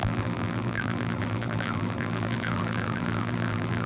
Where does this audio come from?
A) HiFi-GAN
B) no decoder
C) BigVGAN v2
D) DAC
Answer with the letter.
C